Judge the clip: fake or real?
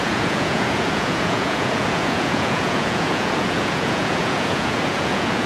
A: fake